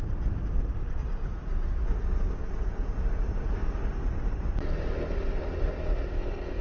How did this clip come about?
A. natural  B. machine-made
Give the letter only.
A